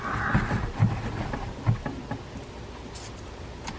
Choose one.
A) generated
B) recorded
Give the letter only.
B